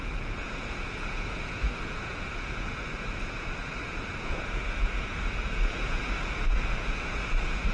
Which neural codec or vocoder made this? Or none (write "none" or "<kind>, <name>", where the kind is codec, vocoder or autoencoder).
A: vocoder, Vocos